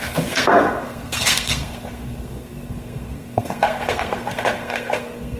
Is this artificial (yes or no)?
yes